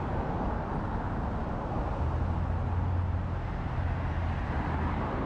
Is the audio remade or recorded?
recorded